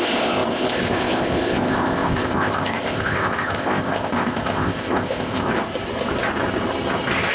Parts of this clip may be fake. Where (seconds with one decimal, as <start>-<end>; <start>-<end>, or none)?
0.0-5.5